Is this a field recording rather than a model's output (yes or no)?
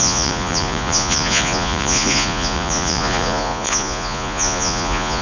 no